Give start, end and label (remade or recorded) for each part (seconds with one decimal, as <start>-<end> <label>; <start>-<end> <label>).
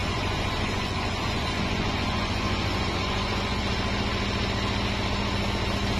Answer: 0.0-3.6 remade; 3.6-6.0 recorded